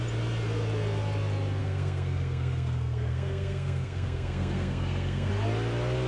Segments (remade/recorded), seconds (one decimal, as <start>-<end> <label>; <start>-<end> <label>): 0.0-1.6 recorded; 1.6-5.3 remade; 5.3-6.1 recorded